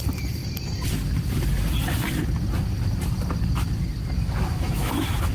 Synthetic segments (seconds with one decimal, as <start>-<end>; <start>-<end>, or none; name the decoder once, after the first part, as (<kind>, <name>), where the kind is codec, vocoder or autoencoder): 4.2-5.3 (autoencoder, DAC-VAE)